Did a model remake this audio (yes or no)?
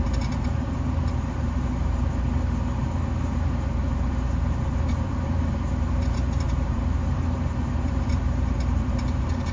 yes